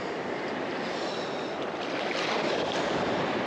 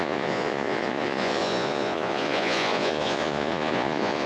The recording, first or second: first